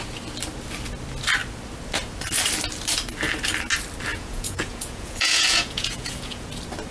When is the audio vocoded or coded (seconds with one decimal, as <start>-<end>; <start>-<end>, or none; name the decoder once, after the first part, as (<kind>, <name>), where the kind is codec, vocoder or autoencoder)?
4.1-6.5 (vocoder, Vocos)